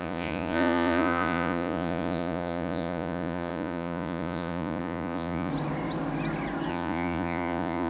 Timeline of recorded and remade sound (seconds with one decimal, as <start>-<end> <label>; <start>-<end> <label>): 0.0-5.5 remade; 5.5-6.7 recorded; 6.7-7.9 remade